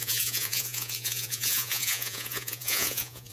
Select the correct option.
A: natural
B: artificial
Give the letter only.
B